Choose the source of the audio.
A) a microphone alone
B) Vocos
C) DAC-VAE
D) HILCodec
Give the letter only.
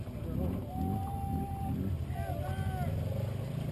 A